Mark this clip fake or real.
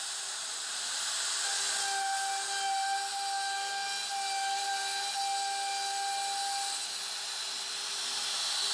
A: real